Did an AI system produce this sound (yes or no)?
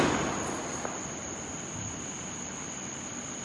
no